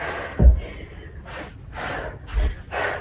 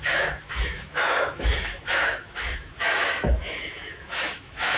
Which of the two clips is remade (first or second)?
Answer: second